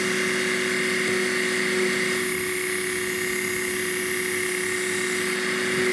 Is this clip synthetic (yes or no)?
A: no